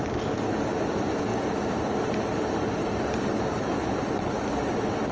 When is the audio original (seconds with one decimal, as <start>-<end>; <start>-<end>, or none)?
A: 0.0-1.3; 4.2-5.1